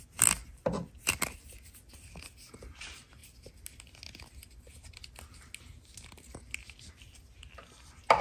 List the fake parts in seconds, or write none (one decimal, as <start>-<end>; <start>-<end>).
none